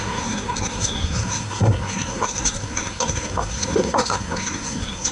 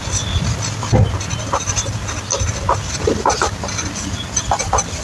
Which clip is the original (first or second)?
second